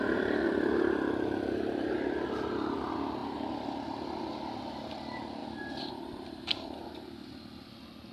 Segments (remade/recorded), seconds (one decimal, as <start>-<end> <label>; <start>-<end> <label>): 0.0-8.1 recorded